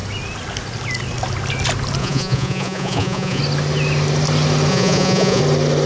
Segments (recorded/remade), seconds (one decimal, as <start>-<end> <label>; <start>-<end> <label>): 0.0-2.0 recorded; 2.0-3.4 remade; 3.4-4.7 recorded; 4.7-5.4 remade; 5.4-5.9 recorded

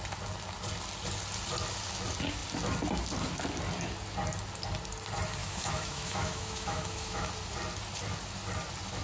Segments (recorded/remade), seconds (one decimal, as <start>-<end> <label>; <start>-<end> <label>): 0.0-5.4 recorded; 5.4-7.3 remade; 7.3-9.0 recorded

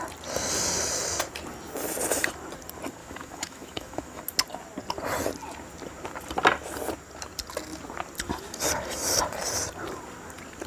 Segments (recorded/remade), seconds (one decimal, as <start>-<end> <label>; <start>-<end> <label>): 0.0-3.0 recorded; 3.0-4.2 remade; 4.2-10.7 recorded

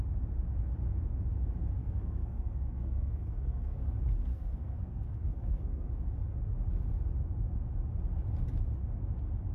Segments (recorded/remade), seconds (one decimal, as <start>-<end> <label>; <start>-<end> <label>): 0.0-1.8 recorded; 1.8-3.8 remade; 3.8-4.3 recorded; 4.3-5.9 remade; 5.9-9.5 recorded

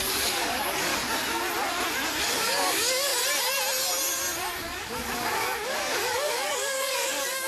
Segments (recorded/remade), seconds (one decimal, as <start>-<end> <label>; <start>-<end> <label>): 0.0-0.9 remade; 0.9-2.2 recorded; 2.2-3.1 remade; 3.1-4.6 recorded; 4.6-7.5 remade

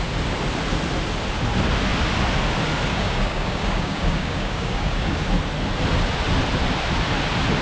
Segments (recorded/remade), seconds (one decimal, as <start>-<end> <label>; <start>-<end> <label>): 0.0-2.9 recorded; 2.9-5.3 remade; 5.3-7.6 recorded

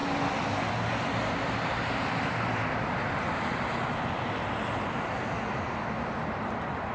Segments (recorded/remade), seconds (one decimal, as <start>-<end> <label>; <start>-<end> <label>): 0.0-6.9 recorded